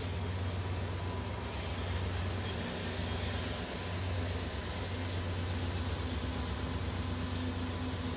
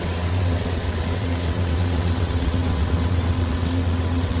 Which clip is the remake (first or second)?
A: second